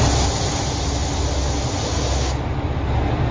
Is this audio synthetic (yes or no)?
no